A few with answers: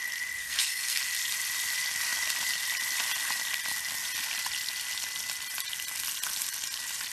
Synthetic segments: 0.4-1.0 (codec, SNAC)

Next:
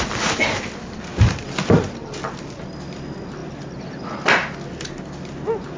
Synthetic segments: 1.1-2.3 (vocoder, BigVGAN v2)

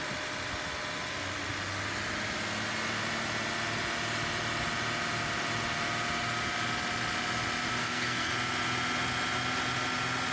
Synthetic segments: 7.8-8.3 (codec, SNAC)

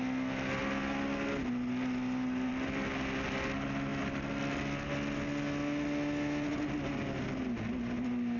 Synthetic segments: none

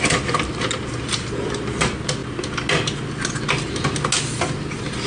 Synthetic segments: none

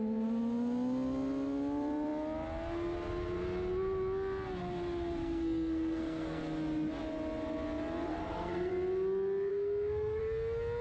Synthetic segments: 5.2-6.4 (codec, SNAC); 8.1-8.7; 9.5-10.2

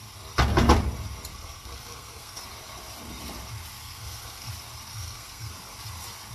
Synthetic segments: 1.3-2.4 (codec, SNAC); 3.8-4.5; 4.9-5.5

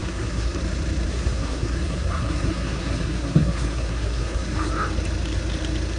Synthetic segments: 0.0-0.6 (codec, SNAC); 1.1-4.7